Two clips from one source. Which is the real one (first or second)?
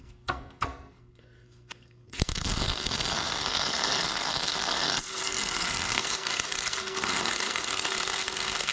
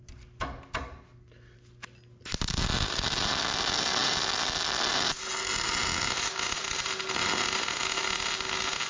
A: second